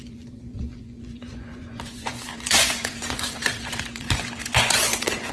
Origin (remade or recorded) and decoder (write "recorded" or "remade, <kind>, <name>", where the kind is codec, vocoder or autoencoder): remade, vocoder, Vocos